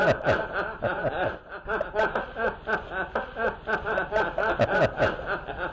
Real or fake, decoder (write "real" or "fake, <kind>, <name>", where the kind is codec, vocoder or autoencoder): real